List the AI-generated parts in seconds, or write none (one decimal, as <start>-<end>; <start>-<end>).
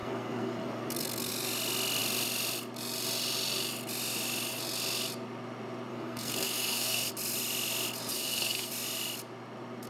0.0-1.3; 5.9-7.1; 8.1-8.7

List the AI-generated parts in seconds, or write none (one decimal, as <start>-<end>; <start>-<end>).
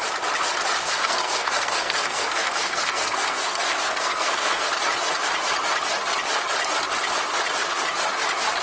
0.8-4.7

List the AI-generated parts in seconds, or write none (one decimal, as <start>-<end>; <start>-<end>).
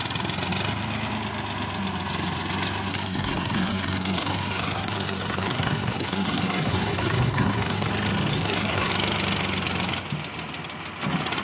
2.9-7.9; 8.3-8.9